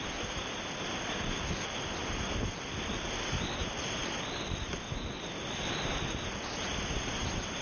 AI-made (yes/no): no